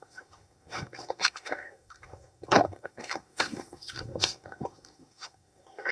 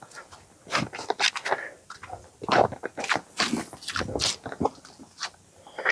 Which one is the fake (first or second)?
first